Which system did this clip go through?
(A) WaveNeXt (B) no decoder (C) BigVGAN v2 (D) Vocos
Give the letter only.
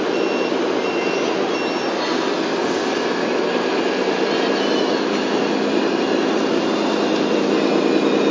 B